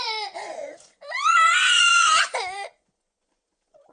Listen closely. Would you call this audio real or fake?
fake